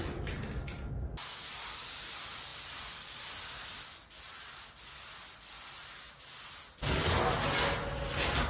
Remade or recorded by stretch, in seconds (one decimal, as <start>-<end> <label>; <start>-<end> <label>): 0.0-8.5 recorded